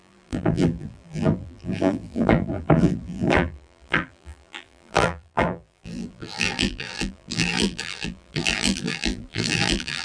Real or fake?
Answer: fake